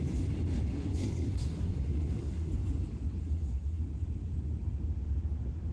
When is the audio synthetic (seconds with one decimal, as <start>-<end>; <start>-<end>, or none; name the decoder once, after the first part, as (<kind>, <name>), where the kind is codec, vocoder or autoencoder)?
0.7-2.5 (codec, SNAC); 3.2-3.8